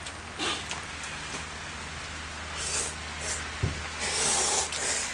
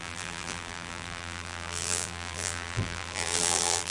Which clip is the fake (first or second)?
second